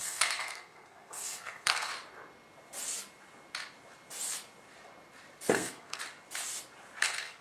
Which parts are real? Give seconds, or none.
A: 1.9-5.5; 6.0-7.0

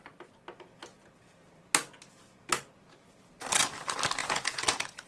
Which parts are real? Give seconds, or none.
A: 0.0-4.2

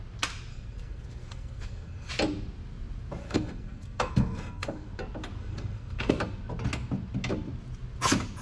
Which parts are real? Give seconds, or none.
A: 0.0-0.5; 2.1-3.2; 4.9-5.4; 6.1-8.4

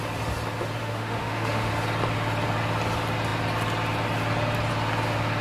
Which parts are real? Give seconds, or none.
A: 0.0-0.8; 1.7-5.4

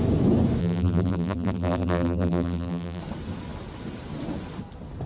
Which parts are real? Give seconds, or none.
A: 0.0-0.6; 3.0-5.1

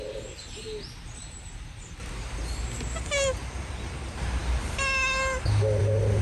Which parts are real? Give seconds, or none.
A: 0.0-1.2; 1.9-6.2